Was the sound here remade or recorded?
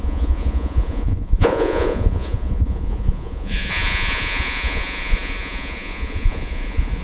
remade